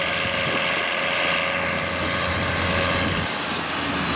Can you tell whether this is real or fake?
real